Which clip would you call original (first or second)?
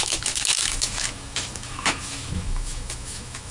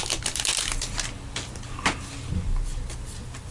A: second